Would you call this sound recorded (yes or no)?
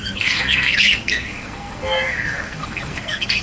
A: no